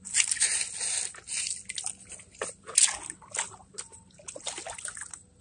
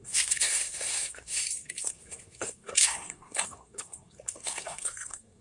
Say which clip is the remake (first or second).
second